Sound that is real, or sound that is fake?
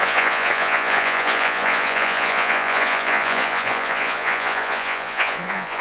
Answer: fake